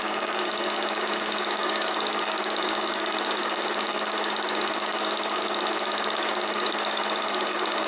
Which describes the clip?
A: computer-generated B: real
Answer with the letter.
A